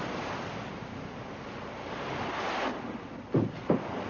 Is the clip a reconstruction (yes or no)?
no